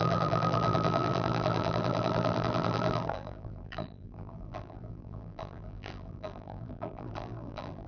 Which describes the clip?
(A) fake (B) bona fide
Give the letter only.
A